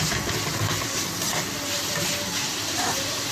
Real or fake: real